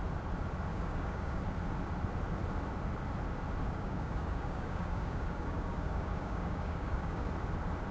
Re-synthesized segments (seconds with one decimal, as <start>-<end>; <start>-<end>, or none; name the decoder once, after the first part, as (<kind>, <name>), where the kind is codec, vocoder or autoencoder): 0.7-1.4 (codec, DAC); 3.6-7.3